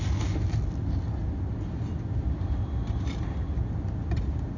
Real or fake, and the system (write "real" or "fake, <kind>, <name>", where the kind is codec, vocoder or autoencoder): real